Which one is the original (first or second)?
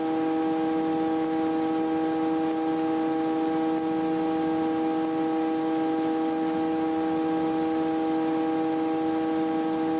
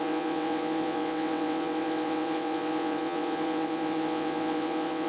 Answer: first